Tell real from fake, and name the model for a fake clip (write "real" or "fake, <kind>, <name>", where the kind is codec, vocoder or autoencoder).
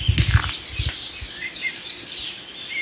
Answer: real